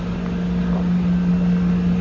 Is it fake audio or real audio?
real